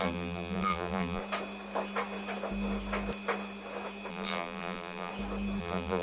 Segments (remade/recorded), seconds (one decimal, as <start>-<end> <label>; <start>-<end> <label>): 0.0-1.2 remade; 1.2-4.1 recorded; 4.1-5.1 remade; 5.1-5.6 recorded; 5.6-6.0 remade